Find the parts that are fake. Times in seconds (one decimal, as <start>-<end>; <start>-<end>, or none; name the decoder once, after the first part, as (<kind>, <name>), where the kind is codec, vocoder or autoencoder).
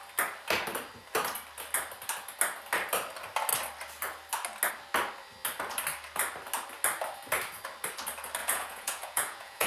8.4-9.7 (vocoder, Vocos)